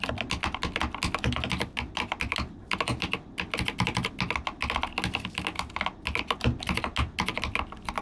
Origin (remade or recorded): recorded